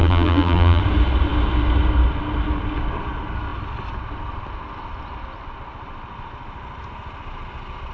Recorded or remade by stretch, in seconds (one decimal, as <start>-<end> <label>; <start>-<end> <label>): 0.0-0.8 remade; 0.8-7.9 recorded